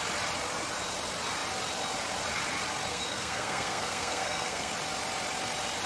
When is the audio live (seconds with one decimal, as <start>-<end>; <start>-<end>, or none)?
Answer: 0.0-2.9; 4.7-5.9